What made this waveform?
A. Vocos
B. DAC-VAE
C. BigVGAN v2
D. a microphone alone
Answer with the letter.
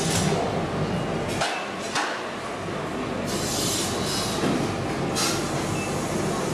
D